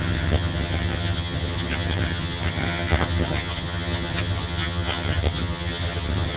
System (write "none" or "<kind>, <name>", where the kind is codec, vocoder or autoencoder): vocoder, HiFi-GAN